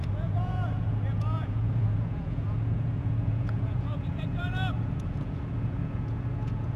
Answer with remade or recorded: remade